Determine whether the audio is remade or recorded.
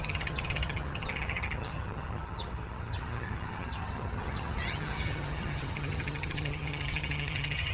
remade